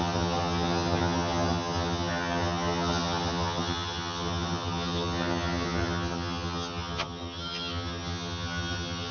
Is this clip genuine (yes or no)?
no